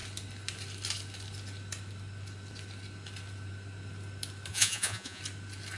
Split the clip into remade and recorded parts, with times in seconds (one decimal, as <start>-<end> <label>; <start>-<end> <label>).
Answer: 0.0-4.5 recorded; 4.5-5.2 remade; 5.2-5.8 recorded